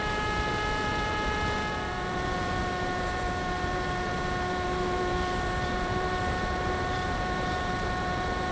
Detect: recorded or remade remade